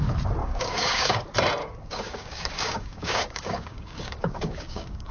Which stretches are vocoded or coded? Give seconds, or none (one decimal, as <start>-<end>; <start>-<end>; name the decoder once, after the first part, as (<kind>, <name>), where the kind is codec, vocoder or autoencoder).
0.4-1.2 (codec, DAC); 1.6-5.1

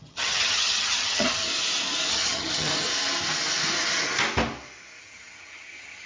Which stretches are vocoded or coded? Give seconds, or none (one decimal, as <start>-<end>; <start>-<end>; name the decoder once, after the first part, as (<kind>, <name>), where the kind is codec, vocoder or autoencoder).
0.0-1.5 (vocoder, HiFi-GAN); 2.1-2.7; 5.0-6.1

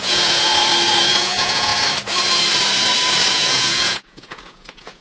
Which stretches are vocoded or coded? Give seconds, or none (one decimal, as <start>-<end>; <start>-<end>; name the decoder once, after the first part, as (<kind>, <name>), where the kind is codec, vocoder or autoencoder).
0.0-0.5 (vocoder, Vocos); 1.1-1.7; 3.3-5.0

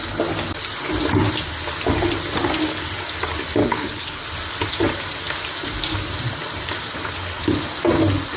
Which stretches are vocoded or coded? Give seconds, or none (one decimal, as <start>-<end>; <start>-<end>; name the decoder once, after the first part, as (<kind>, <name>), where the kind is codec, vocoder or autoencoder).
3.6-4.2 (codec, HILCodec)

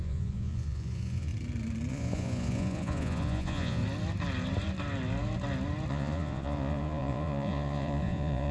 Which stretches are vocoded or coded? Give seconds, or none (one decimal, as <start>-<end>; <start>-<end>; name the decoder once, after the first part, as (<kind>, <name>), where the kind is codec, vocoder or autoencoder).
0.0-1.3 (vocoder, Vocos); 1.9-3.8; 5.9-8.5

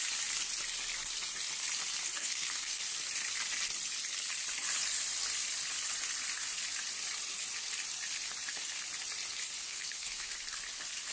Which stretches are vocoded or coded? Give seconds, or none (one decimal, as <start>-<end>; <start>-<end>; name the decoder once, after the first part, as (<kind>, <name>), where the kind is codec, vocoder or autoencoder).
2.2-2.8 (codec, SNAC); 9.6-10.3